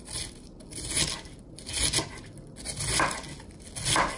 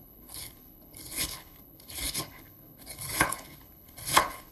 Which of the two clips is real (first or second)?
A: first